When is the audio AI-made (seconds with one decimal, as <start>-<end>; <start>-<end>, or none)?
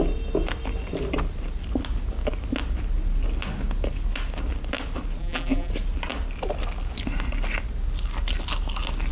5.2-5.7